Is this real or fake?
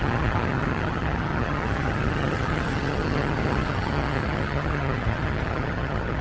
fake